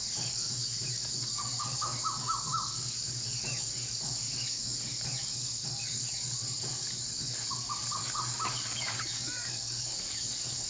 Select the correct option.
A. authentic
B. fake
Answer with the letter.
B